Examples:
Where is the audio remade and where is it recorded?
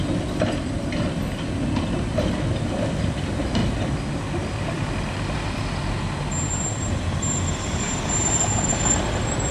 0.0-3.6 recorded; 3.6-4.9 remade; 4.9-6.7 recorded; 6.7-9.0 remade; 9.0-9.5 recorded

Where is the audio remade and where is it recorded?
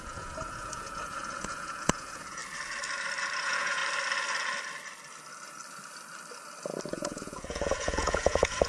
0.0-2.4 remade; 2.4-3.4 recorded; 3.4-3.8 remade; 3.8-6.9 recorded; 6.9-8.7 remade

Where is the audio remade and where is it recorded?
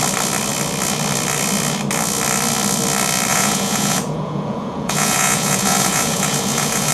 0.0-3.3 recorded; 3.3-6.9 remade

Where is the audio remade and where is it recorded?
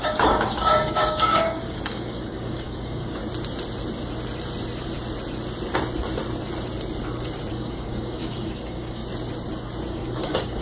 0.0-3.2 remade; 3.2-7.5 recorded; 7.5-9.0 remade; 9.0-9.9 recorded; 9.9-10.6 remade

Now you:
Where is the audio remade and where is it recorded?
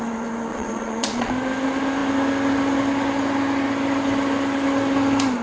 0.0-0.5 recorded; 0.5-1.3 remade; 1.3-5.4 recorded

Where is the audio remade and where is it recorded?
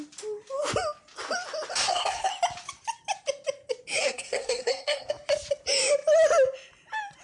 0.0-1.7 recorded; 1.7-2.3 remade; 2.3-4.0 recorded; 4.0-5.1 remade; 5.1-7.2 recorded